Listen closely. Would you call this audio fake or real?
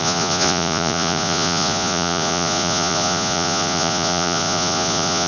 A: fake